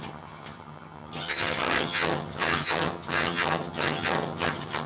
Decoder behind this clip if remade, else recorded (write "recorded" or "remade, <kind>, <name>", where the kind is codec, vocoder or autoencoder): remade, vocoder, HiFi-GAN